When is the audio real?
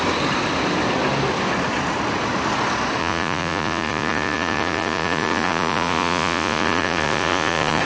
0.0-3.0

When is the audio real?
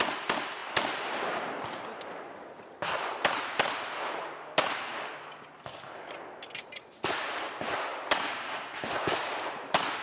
0.0-10.0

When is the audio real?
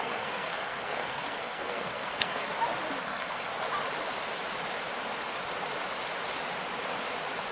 2.5-3.0; 3.5-7.5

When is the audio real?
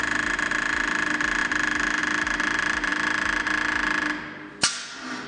0.0-5.3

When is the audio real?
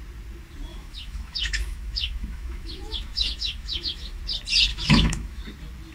0.0-0.7; 4.2-4.7; 5.4-5.9